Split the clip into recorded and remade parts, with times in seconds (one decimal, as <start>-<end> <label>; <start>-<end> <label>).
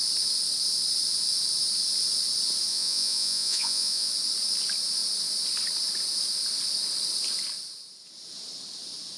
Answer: 0.0-2.7 recorded; 2.7-4.1 remade; 4.1-9.2 recorded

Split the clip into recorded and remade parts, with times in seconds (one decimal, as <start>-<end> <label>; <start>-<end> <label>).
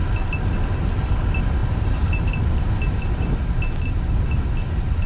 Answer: 0.0-1.6 recorded; 1.6-2.2 remade; 2.2-5.1 recorded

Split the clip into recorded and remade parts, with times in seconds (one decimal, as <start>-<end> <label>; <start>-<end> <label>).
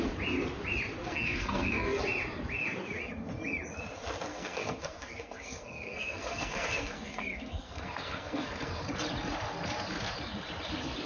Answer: 0.0-1.0 recorded; 1.0-2.0 remade; 2.0-4.3 recorded; 4.3-8.8 remade; 8.8-11.1 recorded